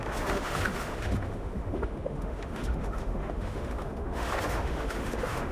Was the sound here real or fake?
fake